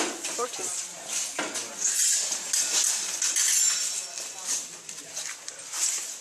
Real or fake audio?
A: real